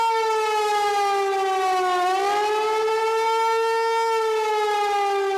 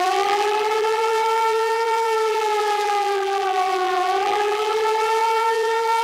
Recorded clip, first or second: first